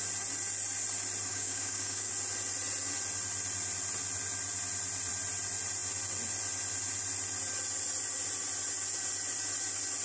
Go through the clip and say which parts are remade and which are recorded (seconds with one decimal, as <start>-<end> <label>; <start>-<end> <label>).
0.0-1.3 recorded; 1.3-2.1 remade; 2.1-10.0 recorded